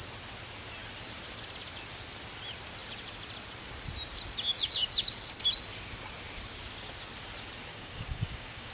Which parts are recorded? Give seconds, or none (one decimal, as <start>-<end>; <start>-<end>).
0.0-7.7